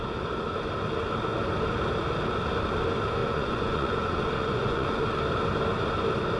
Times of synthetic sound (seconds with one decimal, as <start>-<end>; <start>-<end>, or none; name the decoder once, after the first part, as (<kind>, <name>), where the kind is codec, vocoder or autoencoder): 3.2-5.2 (vocoder, Vocos)